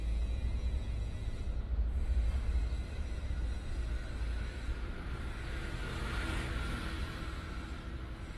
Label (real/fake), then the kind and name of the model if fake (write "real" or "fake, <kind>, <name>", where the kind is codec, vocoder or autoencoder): real